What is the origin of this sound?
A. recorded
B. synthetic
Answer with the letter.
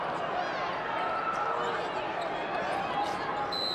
A